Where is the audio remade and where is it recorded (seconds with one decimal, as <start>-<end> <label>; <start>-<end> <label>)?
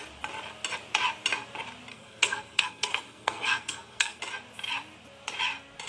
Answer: 0.0-1.9 recorded; 1.9-4.2 remade; 4.2-5.9 recorded